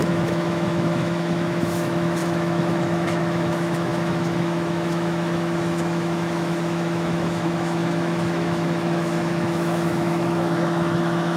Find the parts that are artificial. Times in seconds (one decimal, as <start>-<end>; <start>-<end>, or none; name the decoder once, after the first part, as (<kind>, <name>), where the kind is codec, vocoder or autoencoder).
0.0-11.4 (autoencoder, DAC-VAE)